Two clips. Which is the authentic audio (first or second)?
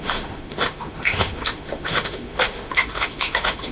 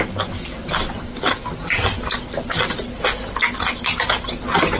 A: second